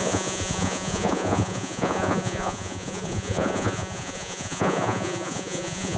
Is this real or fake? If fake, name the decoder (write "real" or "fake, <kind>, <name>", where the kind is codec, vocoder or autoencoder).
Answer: fake, vocoder, Vocos